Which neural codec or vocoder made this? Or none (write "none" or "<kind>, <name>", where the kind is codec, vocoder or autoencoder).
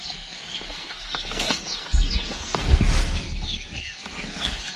codec, SNAC